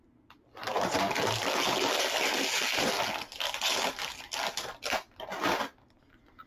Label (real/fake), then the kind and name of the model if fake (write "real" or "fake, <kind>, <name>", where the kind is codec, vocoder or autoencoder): real